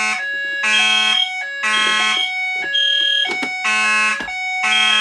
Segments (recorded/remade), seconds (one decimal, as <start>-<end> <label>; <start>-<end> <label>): 0.0-5.0 recorded

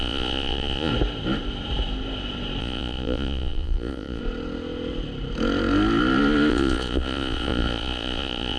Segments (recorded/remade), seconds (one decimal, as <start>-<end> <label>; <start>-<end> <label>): 0.0-0.9 remade; 0.9-2.6 recorded; 2.6-4.2 remade; 4.2-6.5 recorded; 6.5-8.6 remade

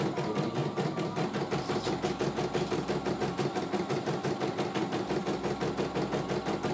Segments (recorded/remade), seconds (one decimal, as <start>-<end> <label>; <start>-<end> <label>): 0.0-6.7 recorded